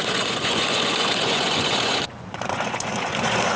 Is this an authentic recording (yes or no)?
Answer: no